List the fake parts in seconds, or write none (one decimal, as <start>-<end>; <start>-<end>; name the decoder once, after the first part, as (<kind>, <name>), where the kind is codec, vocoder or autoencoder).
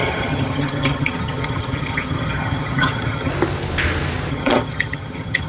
0.0-3.3 (vocoder, HiFi-GAN); 4.3-5.5